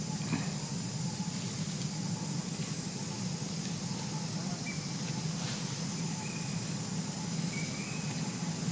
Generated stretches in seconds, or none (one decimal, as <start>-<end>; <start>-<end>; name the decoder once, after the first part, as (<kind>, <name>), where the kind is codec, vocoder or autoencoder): none

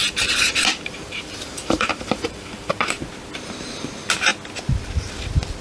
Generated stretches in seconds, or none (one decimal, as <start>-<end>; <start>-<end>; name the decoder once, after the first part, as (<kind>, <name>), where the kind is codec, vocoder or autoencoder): 0.0-3.0 (vocoder, BigVGAN v2)

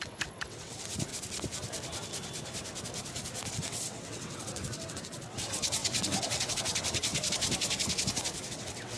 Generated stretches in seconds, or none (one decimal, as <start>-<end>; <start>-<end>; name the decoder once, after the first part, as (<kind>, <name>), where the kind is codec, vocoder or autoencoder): 0.0-1.1 (vocoder, WaveNeXt); 3.5-7.1; 8.5-9.0

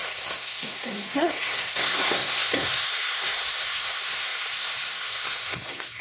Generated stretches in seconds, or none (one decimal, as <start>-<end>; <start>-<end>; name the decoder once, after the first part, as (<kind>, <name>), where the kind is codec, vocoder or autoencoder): 0.0-6.0 (codec, SNAC)

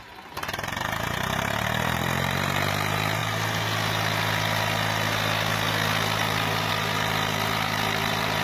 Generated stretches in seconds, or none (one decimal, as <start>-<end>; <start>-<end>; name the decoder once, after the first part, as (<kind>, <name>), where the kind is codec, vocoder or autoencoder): none

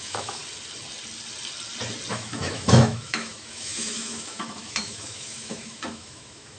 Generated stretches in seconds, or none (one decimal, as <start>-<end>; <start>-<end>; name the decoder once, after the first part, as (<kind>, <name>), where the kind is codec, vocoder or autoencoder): 0.0-0.4 (autoencoder, DAC-VAE); 2.1-6.6

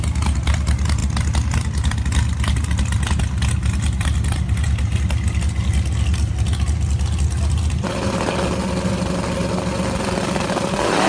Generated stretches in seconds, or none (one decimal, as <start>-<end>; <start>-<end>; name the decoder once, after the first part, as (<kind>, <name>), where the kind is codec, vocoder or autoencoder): none

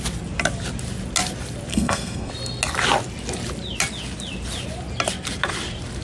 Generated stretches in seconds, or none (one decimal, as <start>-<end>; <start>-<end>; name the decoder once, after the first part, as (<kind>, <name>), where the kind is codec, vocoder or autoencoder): 1.7-2.3 (codec, SNAC)